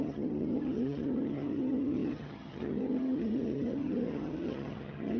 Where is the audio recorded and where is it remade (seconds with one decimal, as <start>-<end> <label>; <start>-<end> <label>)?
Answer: 0.0-5.2 remade

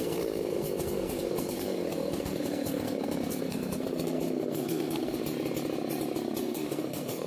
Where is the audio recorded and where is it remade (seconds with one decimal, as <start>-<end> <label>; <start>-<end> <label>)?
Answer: 0.0-5.2 remade; 5.2-6.4 recorded; 6.4-7.3 remade